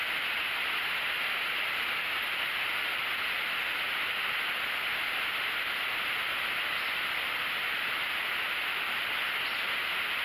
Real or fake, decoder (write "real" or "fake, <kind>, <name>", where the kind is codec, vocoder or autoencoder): real